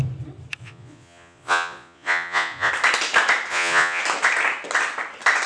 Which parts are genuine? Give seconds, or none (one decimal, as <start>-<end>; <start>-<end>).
0.0-0.6; 2.7-3.5; 4.0-5.5